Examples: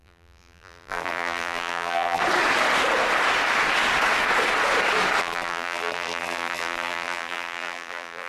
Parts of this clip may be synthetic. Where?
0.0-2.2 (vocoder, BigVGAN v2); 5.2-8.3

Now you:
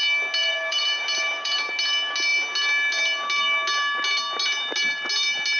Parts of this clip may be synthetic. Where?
0.4-1.7 (vocoder, BigVGAN v2)

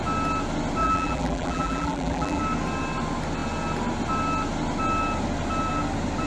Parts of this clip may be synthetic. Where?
0.8-2.4 (vocoder, BigVGAN v2)

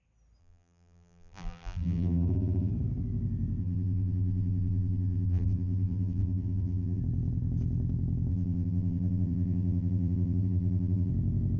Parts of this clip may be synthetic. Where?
0.4-2.7 (vocoder, BigVGAN v2); 3.6-7.0; 8.3-11.1

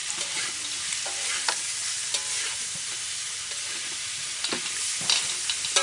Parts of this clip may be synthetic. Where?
0.0-0.5 (vocoder, BigVGAN v2)

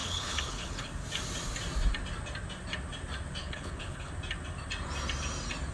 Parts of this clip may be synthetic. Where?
0.0-0.9 (codec, HILCodec); 3.4-4.1

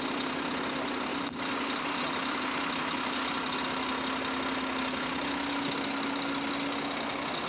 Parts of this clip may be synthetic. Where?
1.1-2.4 (vocoder, BigVGAN v2)